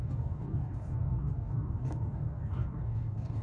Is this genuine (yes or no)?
no